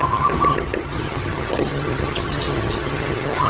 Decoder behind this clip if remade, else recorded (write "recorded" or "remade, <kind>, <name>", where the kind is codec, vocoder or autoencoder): remade, vocoder, HiFi-GAN